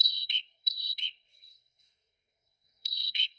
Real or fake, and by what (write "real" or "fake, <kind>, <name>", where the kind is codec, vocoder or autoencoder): fake, codec, SNAC